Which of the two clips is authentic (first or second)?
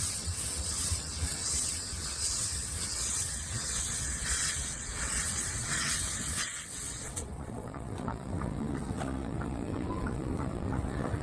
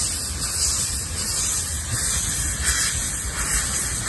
second